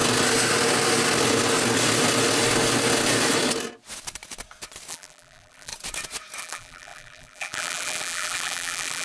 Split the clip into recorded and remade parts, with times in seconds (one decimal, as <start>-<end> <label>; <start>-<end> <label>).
0.0-4.9 recorded; 4.9-5.7 remade; 5.7-6.4 recorded; 6.4-9.0 remade